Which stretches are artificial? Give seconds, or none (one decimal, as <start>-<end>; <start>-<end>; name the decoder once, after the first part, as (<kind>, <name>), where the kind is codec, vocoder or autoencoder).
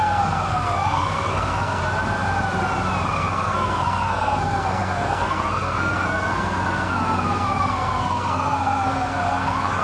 0.0-1.8 (codec, SNAC); 3.1-9.8